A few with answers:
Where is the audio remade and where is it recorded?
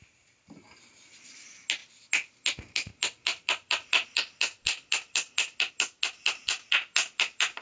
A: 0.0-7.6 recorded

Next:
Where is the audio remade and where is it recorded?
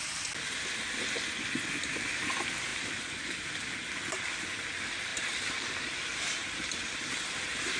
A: 0.0-5.1 recorded; 5.1-5.7 remade; 5.7-7.8 recorded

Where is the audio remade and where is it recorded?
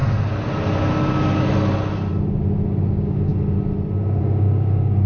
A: 0.0-2.9 recorded; 2.9-3.3 remade; 3.3-4.2 recorded; 4.2-5.1 remade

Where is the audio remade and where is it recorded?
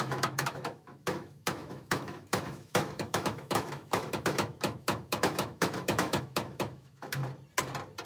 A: 0.0-7.2 remade; 7.2-8.1 recorded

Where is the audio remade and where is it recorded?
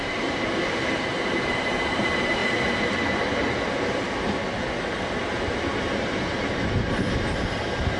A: 0.0-2.4 remade; 2.4-5.8 recorded; 5.8-8.0 remade